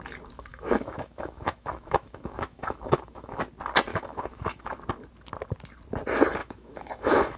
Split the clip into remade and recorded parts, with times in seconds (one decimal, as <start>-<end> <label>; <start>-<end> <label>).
0.0-0.5 recorded; 0.5-3.4 remade; 3.4-3.9 recorded; 3.9-4.8 remade; 4.8-6.4 recorded; 6.4-7.4 remade